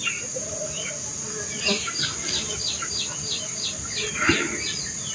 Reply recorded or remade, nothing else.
recorded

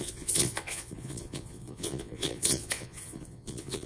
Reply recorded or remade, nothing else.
remade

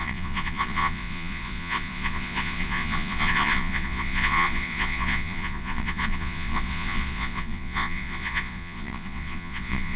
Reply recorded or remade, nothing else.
remade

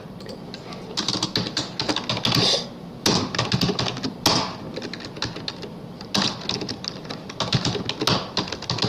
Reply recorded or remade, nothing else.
recorded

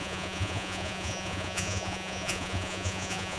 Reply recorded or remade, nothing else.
remade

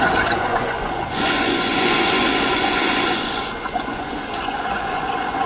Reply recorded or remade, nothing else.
remade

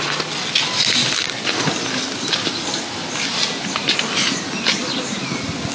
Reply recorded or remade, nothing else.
recorded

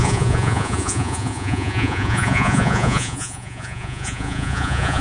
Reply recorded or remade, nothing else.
remade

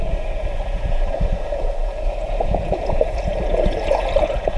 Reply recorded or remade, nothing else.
remade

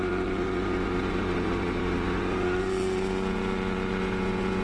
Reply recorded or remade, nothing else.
remade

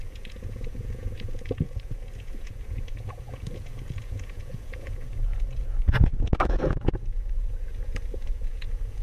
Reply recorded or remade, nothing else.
remade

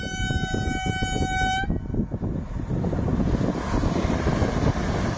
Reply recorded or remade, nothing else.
recorded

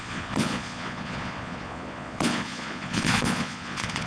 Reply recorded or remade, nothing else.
remade